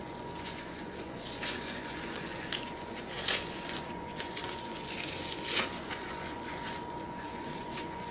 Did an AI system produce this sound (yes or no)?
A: yes